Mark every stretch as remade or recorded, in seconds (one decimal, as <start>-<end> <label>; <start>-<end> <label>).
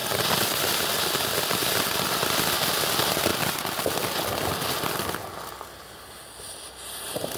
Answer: 0.0-7.4 recorded